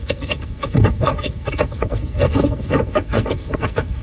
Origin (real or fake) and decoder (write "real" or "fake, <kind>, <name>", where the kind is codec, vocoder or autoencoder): fake, codec, SNAC